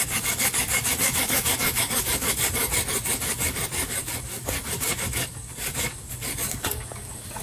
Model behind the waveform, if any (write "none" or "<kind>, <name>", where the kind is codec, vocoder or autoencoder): codec, DAC